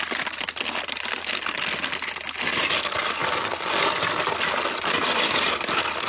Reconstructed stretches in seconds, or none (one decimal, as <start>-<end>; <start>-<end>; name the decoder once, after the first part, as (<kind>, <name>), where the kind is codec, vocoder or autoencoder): none